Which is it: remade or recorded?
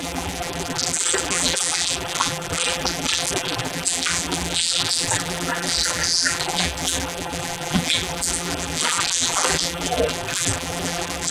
remade